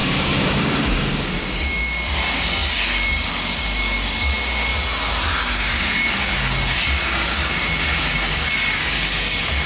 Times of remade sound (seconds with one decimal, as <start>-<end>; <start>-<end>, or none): 0.0-4.7; 5.3-9.7

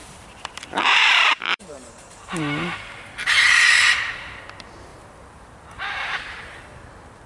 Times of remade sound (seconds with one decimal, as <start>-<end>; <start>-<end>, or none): 0.0-4.4; 4.9-6.4

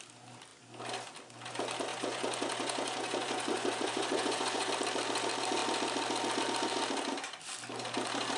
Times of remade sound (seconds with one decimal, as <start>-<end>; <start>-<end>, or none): 1.9-4.7

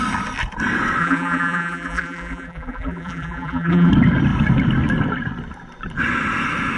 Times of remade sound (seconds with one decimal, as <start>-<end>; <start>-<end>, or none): 1.0-3.9

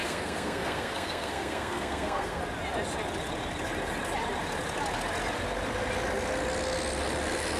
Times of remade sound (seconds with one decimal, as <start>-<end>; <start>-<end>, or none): 0.0-2.4